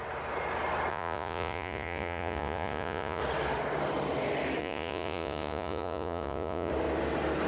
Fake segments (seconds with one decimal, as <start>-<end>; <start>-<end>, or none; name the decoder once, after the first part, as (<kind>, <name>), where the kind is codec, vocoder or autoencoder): 0.9-3.2 (vocoder, Vocos); 4.6-6.7